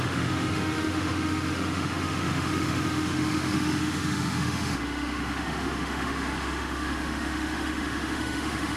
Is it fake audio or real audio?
fake